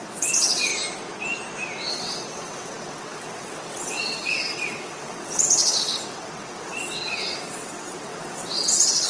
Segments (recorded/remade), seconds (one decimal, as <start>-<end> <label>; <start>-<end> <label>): 0.0-0.7 remade; 0.7-1.9 recorded; 1.9-9.1 remade